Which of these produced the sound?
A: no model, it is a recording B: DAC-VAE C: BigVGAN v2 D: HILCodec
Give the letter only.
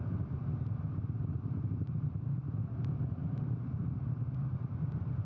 C